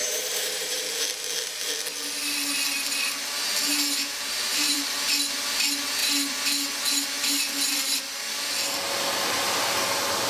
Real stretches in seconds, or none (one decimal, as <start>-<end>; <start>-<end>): 0.8-3.7; 5.1-10.3